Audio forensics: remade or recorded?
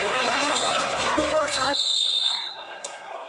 remade